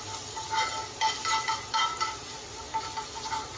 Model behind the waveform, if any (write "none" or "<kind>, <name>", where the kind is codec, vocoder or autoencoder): none